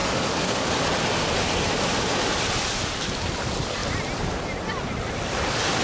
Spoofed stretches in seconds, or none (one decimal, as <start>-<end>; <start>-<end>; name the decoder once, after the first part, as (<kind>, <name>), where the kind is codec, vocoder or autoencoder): 0.0-0.7 (codec, DAC)

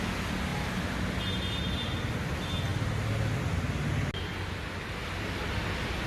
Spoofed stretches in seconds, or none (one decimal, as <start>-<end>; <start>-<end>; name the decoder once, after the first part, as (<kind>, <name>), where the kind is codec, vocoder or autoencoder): none

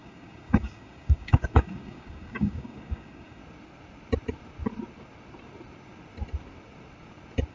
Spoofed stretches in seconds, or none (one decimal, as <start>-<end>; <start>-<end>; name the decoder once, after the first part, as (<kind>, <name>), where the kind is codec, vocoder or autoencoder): 0.0-3.4 (codec, DAC)

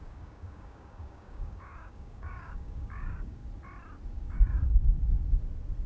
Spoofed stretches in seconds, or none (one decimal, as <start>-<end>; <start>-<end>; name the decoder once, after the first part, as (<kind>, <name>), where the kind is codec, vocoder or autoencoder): 0.0-3.4 (codec, DAC); 4.1-4.7

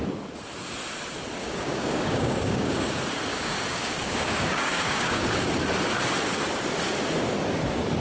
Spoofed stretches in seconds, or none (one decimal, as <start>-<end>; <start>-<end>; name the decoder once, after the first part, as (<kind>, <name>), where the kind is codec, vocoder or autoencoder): 1.4-2.9 (codec, DAC); 3.3-5.5

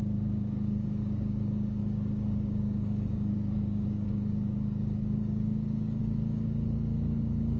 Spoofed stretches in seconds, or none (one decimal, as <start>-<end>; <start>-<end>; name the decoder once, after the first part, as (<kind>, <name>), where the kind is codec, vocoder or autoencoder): 0.0-7.6 (codec, DAC)